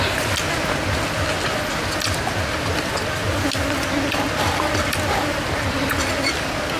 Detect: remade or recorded recorded